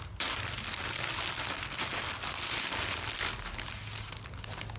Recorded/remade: recorded